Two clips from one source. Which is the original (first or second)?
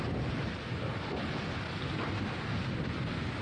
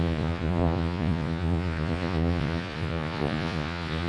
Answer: first